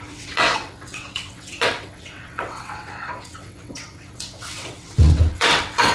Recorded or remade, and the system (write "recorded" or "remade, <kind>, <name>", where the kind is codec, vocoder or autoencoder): remade, vocoder, WaveNeXt